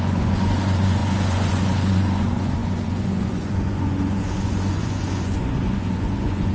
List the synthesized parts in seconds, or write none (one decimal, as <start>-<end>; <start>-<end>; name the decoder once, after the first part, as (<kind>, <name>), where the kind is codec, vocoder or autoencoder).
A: 0.0-6.5 (vocoder, Vocos)